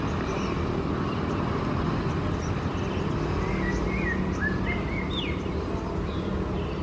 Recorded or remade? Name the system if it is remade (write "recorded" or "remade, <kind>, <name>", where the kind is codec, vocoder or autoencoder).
recorded